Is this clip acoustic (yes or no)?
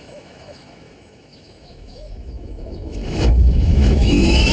no